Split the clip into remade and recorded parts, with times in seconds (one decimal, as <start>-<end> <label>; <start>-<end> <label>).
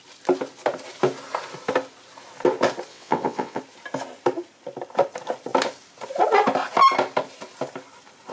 0.0-2.9 recorded; 2.9-3.6 remade; 3.6-8.3 recorded